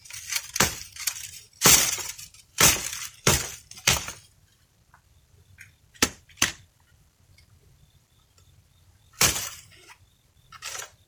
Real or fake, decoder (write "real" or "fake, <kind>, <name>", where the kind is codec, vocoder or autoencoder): fake, vocoder, BigVGAN v2